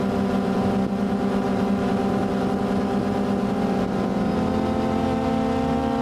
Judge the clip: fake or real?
real